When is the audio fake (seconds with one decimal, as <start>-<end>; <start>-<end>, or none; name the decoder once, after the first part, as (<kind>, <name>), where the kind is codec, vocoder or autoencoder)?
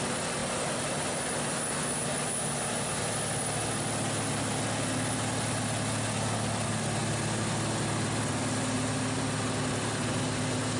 none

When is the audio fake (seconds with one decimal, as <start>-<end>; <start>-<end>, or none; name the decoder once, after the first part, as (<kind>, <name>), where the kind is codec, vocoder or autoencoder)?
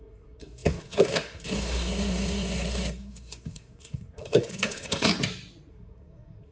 0.0-5.1 (codec, SNAC); 5.7-6.5